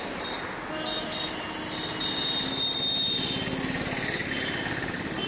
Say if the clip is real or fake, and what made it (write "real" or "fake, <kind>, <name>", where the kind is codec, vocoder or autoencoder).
real